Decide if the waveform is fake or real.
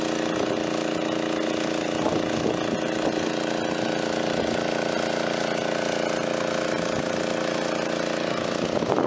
real